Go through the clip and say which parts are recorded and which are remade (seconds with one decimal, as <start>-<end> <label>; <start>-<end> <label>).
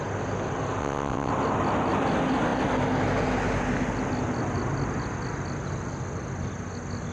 0.0-0.8 recorded; 0.8-1.3 remade; 1.3-7.1 recorded